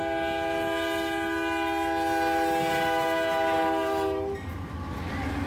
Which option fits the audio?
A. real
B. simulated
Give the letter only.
A